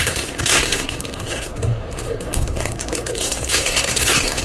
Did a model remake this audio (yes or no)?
yes